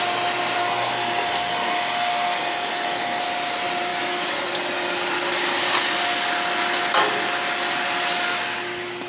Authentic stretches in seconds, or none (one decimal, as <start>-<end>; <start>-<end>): 0.0-0.6; 3.2-9.1